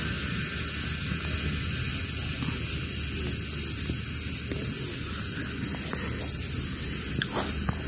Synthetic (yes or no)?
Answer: no